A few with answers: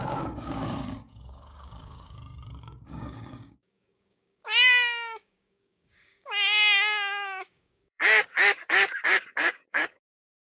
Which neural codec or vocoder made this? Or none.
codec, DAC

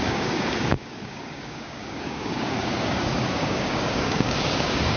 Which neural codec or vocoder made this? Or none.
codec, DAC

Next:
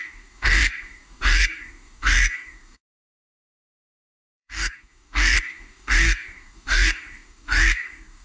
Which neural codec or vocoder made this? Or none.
codec, DAC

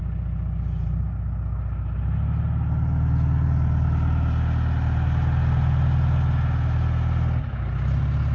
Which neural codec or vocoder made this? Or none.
none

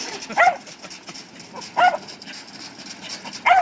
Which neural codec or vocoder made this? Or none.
none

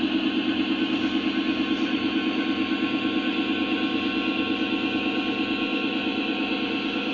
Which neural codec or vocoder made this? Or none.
none